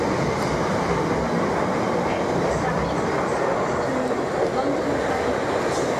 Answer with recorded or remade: recorded